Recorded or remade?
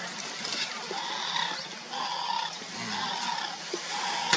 recorded